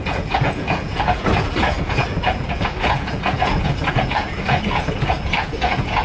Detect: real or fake fake